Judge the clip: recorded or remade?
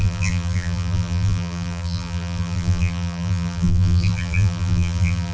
remade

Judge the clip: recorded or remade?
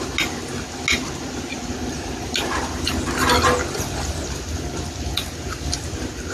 recorded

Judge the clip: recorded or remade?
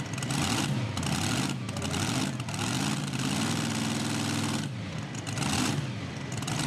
recorded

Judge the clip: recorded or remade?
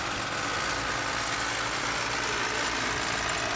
recorded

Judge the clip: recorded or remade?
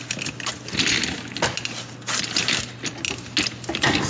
recorded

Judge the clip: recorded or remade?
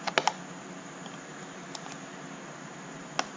recorded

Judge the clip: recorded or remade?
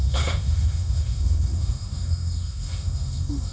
remade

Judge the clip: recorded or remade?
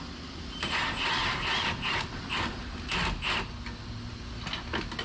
recorded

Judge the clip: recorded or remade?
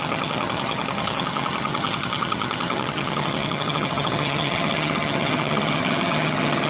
remade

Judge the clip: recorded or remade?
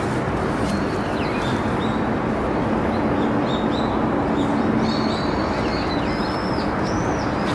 recorded